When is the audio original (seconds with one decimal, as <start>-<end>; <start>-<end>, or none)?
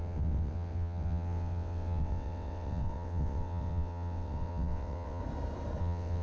5.2-5.8